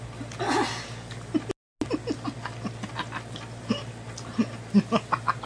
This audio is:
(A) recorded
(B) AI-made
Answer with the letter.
A